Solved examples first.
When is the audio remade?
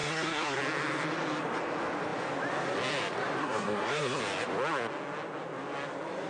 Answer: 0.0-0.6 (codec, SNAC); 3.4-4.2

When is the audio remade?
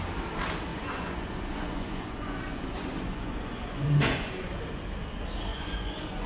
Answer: 0.7-4.5 (vocoder, Vocos); 5.5-6.3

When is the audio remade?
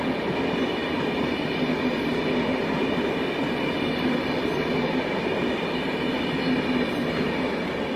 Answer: none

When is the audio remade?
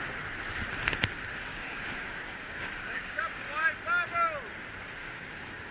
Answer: 1.5-3.2 (codec, DAC); 5.0-5.7